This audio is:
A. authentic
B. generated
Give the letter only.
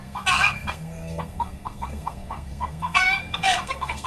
B